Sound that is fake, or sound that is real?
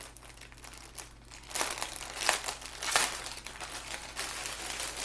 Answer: real